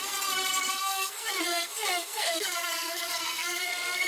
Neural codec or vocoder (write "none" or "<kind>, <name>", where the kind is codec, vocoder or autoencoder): codec, SNAC